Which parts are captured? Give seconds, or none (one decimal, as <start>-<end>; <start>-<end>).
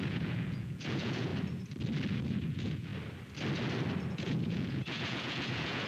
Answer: 1.3-2.1; 2.9-4.1